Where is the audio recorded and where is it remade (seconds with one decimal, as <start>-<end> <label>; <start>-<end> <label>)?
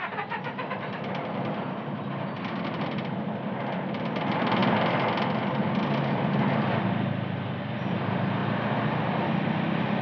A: 0.0-10.0 recorded